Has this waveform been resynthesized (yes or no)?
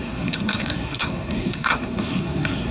yes